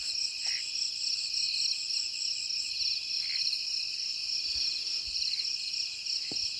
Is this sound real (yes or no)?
yes